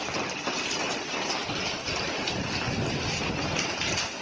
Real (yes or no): yes